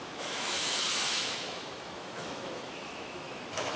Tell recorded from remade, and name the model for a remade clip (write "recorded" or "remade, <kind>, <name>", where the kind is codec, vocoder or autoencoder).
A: remade, autoencoder, DAC-VAE